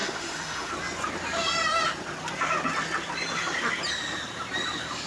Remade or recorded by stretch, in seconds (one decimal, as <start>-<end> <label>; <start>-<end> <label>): 0.0-0.7 remade; 0.7-5.1 recorded